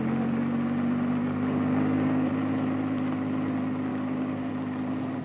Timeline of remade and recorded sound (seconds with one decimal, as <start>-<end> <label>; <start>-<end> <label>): 0.0-1.2 recorded; 1.2-2.3 remade; 2.3-3.9 recorded; 3.9-4.5 remade; 4.5-5.2 recorded